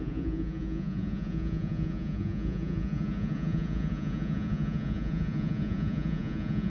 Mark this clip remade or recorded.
remade